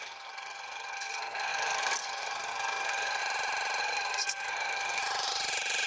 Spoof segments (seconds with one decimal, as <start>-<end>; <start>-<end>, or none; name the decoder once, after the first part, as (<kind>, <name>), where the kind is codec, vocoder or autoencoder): 0.0-3.2 (codec, SNAC); 3.8-5.0